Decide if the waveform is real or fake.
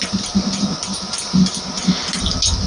real